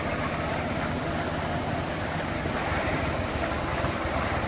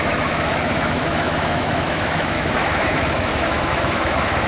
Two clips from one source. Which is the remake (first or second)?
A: second